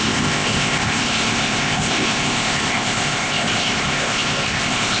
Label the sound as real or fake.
fake